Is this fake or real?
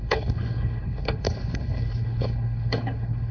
fake